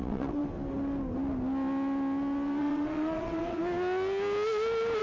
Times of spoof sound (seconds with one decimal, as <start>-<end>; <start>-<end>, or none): 0.0-0.4; 2.6-3.6